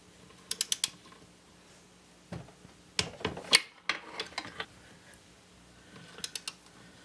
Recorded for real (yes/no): yes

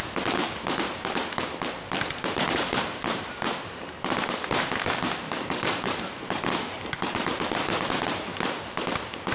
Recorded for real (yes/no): no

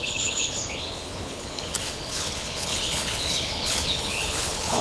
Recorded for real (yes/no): no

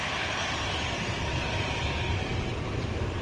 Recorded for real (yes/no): no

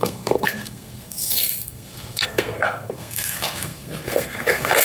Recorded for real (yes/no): no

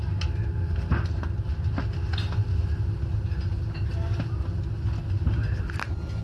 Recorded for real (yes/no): yes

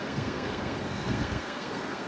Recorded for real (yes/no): no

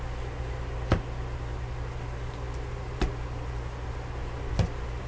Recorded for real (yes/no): yes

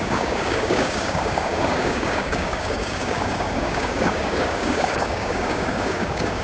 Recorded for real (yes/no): no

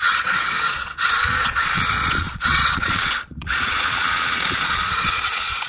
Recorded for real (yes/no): no